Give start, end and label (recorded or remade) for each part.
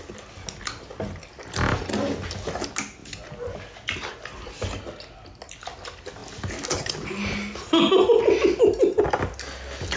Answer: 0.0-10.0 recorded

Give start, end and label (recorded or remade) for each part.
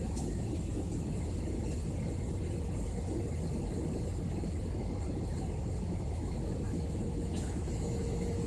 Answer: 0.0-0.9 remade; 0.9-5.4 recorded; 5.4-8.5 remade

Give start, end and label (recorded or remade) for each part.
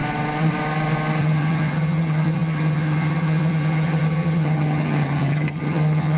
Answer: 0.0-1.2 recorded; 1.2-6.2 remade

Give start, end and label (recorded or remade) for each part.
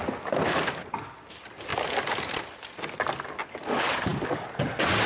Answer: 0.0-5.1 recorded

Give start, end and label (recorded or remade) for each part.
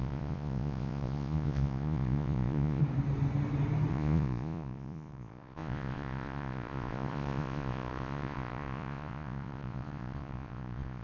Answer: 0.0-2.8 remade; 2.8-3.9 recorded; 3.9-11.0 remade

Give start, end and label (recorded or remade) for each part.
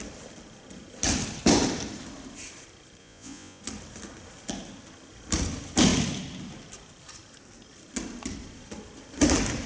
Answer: 0.0-3.0 recorded; 3.0-3.6 remade; 3.6-9.7 recorded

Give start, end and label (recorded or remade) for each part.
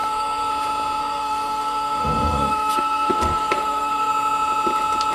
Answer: 0.0-0.5 remade; 0.5-1.0 recorded; 1.0-4.1 remade; 4.1-5.1 recorded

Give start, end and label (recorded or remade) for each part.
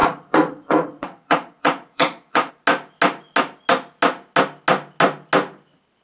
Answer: 0.0-2.5 remade; 2.5-6.0 recorded